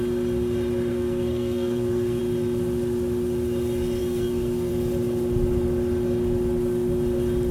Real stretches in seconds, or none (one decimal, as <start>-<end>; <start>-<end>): 0.0-0.9; 2.2-4.0; 4.7-7.5